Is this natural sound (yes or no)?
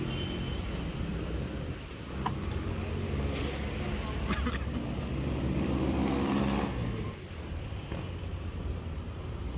yes